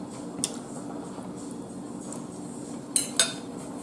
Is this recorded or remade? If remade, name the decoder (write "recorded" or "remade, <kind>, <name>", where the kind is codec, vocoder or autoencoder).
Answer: recorded